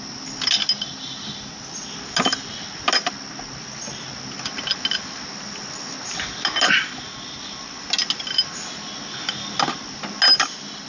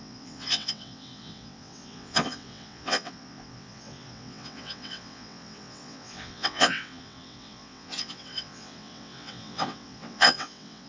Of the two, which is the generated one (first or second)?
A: second